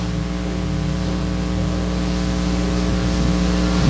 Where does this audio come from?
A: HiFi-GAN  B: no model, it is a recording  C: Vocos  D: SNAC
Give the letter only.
B